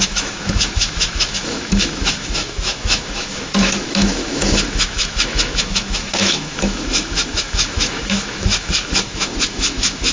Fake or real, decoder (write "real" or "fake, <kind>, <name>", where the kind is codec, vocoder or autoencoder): fake, autoencoder, DAC-VAE